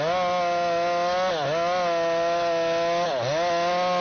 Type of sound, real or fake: real